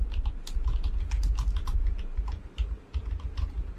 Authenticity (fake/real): real